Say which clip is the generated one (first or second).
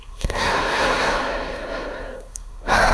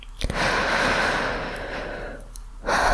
first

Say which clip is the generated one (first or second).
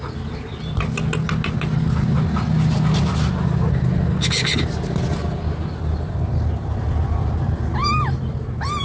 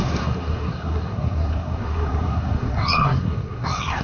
second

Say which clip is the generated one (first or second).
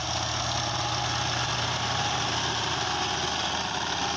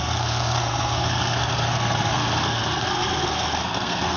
second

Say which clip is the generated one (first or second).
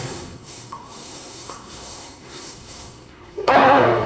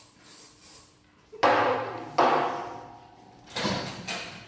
first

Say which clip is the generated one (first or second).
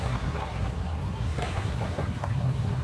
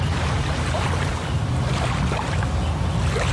first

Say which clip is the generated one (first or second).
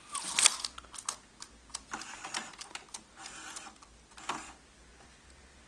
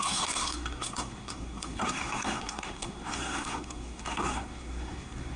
second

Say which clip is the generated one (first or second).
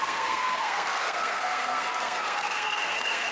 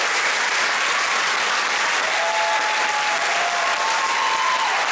first